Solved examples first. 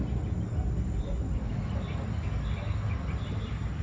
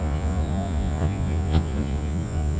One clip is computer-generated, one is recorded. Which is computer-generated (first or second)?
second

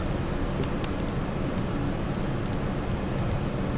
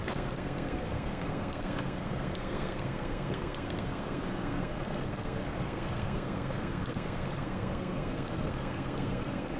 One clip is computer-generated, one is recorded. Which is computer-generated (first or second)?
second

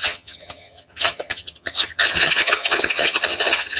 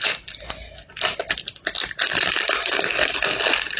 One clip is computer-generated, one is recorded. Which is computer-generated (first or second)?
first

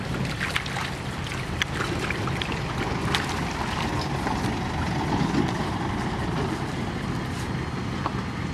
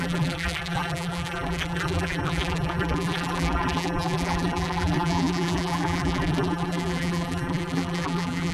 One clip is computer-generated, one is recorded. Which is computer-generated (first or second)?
second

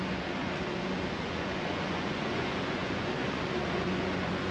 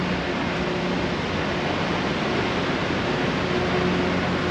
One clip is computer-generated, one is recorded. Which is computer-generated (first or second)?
first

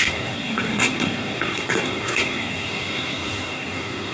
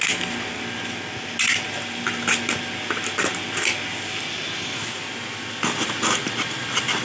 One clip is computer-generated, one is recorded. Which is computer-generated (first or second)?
first